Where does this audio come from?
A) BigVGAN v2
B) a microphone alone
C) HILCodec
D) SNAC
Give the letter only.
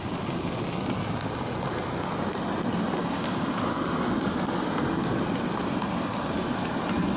B